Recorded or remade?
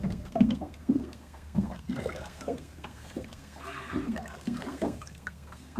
remade